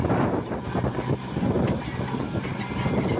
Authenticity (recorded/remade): recorded